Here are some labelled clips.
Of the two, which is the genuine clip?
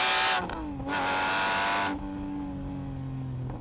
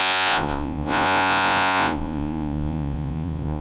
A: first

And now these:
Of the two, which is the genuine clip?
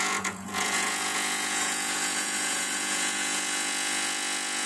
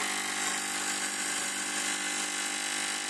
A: second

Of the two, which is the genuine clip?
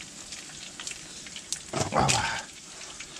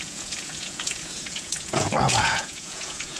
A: first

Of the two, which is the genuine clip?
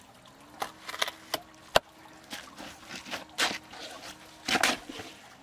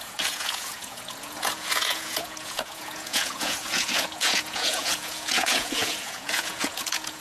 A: first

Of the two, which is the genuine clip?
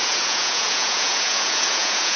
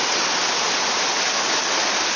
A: second